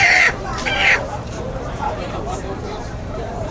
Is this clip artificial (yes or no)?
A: yes